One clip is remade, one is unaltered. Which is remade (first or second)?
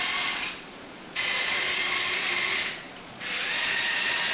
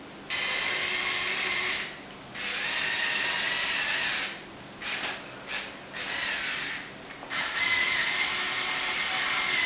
first